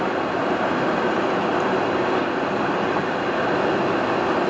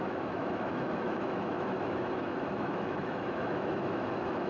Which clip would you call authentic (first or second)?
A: first